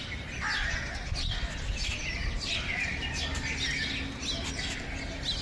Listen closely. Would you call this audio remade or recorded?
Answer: recorded